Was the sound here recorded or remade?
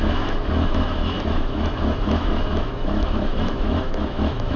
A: remade